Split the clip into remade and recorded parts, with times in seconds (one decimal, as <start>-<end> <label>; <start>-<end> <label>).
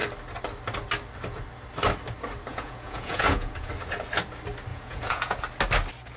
0.0-2.5 recorded; 2.5-3.7 remade; 3.7-4.7 recorded; 4.7-5.4 remade; 5.4-6.2 recorded